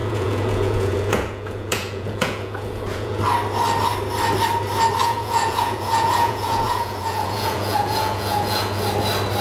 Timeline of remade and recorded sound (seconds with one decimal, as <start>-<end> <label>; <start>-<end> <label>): 0.0-3.2 remade; 3.2-5.0 recorded; 5.0-8.8 remade; 8.8-9.4 recorded